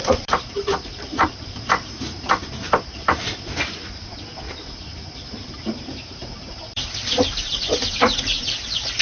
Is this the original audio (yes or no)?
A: no